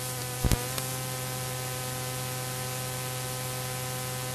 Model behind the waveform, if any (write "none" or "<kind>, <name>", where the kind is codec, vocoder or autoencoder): none